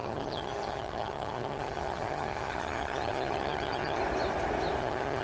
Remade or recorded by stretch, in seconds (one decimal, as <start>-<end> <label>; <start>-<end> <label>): 0.0-4.0 remade; 4.0-4.8 recorded; 4.8-5.2 remade